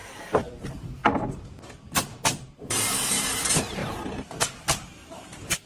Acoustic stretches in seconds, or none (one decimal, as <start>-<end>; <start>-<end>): 0.0-0.6; 3.8-4.6

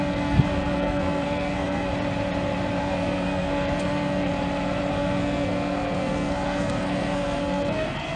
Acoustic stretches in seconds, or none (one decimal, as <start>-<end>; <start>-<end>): 1.9-2.8; 4.3-4.9